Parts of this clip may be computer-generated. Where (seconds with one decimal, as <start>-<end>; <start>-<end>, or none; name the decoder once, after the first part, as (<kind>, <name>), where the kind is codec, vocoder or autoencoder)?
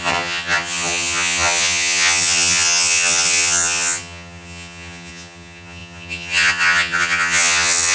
0.0-7.9 (vocoder, HiFi-GAN)